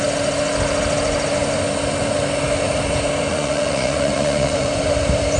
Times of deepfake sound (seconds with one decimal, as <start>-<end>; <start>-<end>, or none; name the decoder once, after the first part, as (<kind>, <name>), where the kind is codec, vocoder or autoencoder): 3.3-4.8 (vocoder, Vocos)